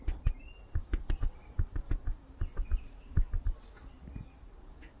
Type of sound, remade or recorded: recorded